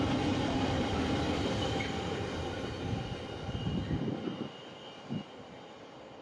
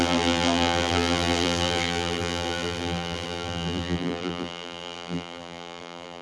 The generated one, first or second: second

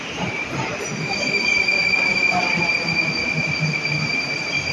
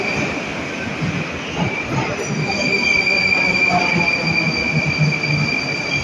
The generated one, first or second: first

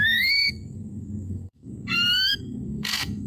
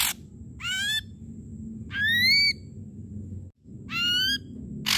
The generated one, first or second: first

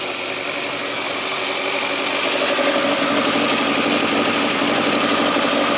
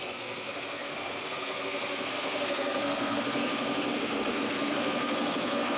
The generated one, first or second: second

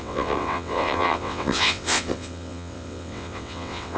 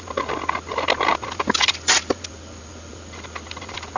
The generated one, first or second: first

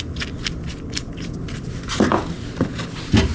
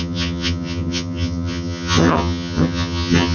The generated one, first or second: second